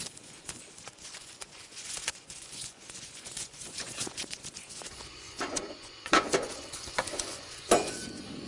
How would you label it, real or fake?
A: fake